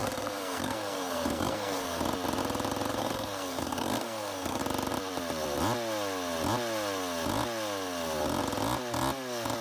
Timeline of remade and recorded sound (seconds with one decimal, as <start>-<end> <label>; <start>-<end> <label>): 0.0-2.0 remade; 2.0-2.9 recorded; 2.9-4.6 remade; 4.6-9.6 recorded